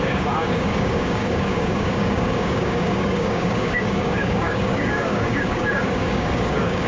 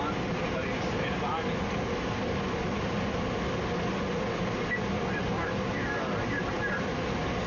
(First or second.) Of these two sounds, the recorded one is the second